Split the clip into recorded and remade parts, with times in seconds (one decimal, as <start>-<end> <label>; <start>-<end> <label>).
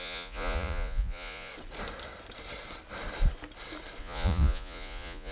0.0-1.5 remade; 1.5-4.0 recorded; 4.0-5.3 remade